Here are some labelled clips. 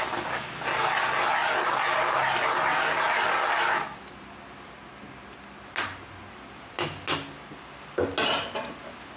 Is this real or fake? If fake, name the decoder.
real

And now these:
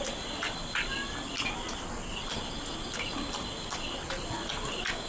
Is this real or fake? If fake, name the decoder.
real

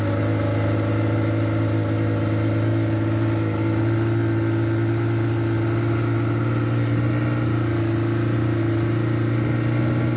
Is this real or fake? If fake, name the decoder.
real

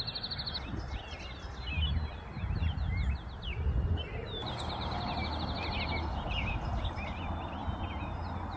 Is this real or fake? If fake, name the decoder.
real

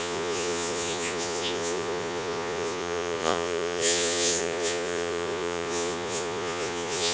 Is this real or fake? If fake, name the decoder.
fake, vocoder, Vocos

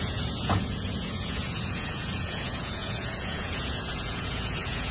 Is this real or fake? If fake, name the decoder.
fake, vocoder, Vocos